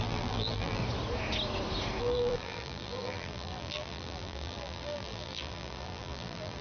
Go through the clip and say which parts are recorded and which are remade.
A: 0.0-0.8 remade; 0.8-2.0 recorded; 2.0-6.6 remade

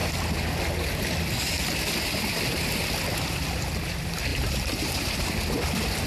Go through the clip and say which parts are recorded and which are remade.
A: 0.0-4.3 recorded; 4.3-5.2 remade; 5.2-6.1 recorded

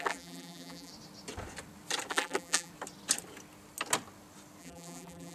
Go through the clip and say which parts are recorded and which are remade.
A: 0.0-0.9 remade; 0.9-2.1 recorded; 2.1-2.7 remade; 2.7-4.6 recorded; 4.6-5.3 remade

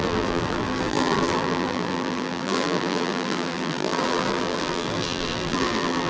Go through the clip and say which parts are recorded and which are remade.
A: 0.0-6.1 remade

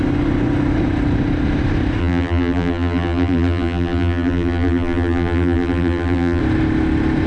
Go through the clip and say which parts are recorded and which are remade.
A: 0.0-2.0 recorded; 2.0-6.4 remade; 6.4-7.3 recorded

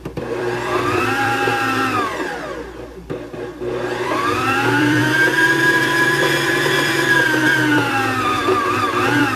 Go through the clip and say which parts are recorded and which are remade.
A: 0.0-1.5 remade; 1.5-3.7 recorded; 3.7-9.4 remade